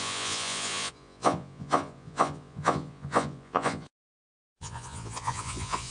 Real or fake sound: fake